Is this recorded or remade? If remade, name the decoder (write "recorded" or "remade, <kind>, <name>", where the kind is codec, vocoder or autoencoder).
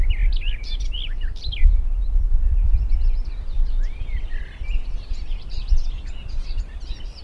remade, vocoder, BigVGAN v2